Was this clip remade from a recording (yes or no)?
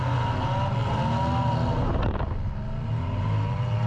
no